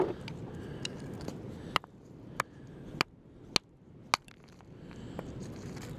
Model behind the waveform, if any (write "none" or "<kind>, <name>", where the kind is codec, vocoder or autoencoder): none